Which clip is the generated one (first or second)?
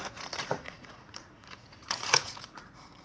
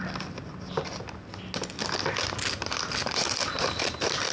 first